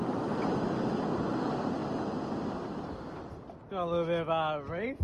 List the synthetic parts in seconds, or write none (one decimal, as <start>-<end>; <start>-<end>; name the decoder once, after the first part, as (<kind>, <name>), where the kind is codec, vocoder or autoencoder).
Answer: none

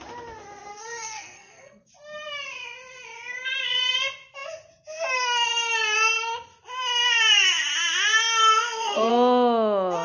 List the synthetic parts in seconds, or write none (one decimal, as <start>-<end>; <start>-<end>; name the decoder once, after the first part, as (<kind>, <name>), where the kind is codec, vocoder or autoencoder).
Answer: 0.7-1.9 (codec, SNAC); 8.6-9.1

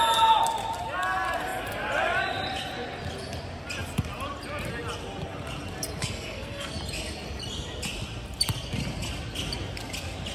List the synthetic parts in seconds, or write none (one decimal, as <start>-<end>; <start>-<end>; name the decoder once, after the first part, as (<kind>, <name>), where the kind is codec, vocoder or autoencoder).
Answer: 6.0-6.8 (codec, SNAC)

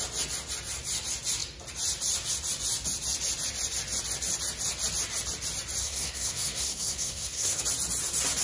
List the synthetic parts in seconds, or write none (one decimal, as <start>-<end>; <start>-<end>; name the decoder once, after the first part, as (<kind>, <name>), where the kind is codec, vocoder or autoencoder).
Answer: 5.8-7.6 (codec, SNAC)

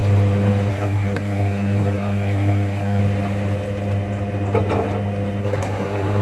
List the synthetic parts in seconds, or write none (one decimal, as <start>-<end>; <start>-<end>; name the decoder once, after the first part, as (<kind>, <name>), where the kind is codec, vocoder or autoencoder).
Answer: 0.7-3.0 (codec, SNAC); 5.4-6.2

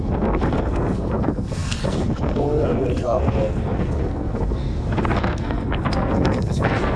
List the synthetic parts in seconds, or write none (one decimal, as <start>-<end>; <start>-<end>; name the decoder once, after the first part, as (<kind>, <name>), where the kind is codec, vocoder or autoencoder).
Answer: 0.0-7.0 (codec, SNAC)

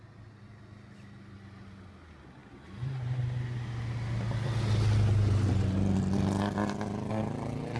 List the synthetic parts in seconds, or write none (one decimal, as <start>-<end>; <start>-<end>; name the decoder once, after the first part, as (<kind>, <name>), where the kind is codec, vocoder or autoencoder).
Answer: none